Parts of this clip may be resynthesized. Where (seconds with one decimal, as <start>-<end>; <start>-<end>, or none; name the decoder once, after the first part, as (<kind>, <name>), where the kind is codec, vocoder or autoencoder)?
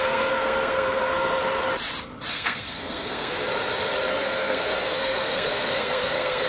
0.0-1.4 (codec, SNAC); 2.3-3.4; 4.1-6.5